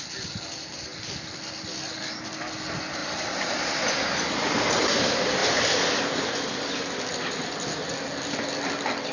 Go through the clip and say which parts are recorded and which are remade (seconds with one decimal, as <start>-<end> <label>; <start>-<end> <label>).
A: 0.0-0.9 recorded; 0.9-1.8 remade; 1.8-3.0 recorded; 3.0-4.6 remade; 4.6-9.1 recorded